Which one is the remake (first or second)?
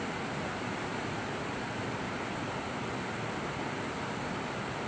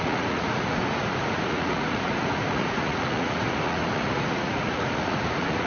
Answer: second